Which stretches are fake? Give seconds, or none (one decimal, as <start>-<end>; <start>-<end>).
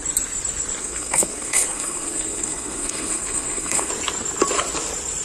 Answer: 0.8-3.9